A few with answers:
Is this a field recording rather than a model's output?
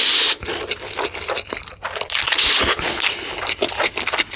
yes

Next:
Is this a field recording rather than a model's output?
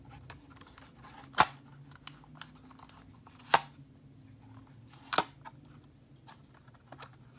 yes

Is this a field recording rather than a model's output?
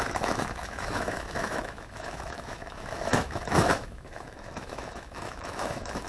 no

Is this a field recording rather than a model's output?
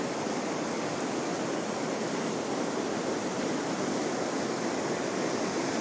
yes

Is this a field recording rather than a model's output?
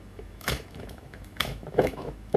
no